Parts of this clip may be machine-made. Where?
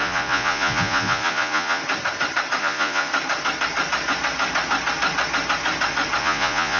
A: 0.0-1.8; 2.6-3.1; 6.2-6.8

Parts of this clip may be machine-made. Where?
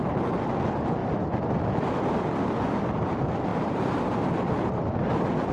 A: none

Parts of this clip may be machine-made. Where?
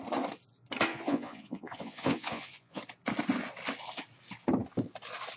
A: 0.9-2.8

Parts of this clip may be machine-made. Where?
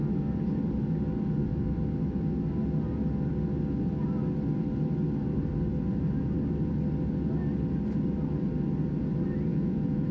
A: 9.5-10.1